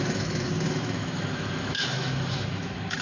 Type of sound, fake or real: fake